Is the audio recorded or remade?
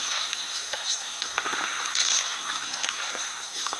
remade